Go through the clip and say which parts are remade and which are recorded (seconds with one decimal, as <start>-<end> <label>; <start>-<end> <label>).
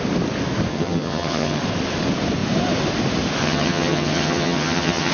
0.0-0.7 recorded; 0.7-1.6 remade; 1.6-3.4 recorded; 3.4-5.1 remade